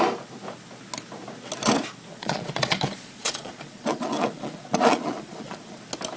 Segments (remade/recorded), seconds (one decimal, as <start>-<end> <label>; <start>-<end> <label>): 0.0-2.1 recorded; 2.1-5.8 remade; 5.8-6.2 recorded